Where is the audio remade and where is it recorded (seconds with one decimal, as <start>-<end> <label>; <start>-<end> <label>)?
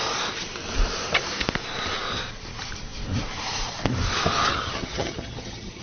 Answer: 0.0-4.5 recorded; 4.5-5.8 remade